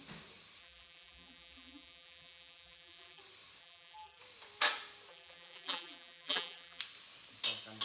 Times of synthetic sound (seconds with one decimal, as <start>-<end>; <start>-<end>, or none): 0.6-3.2; 3.6-4.2; 5.1-6.8